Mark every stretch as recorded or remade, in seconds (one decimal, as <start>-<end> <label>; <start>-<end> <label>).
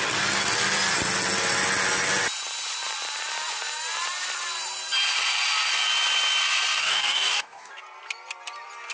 0.0-6.8 recorded; 6.8-7.7 remade; 7.7-8.9 recorded